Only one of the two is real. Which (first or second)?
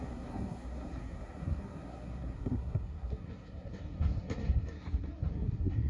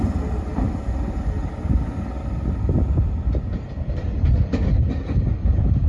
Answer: second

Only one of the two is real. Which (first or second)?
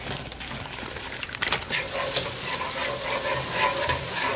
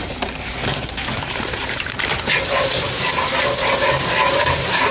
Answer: first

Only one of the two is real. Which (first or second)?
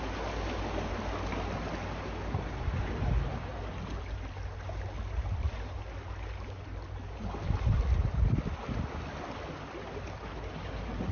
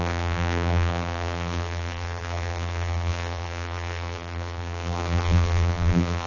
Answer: first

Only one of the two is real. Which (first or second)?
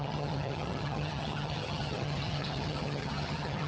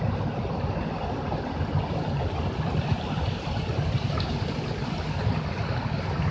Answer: second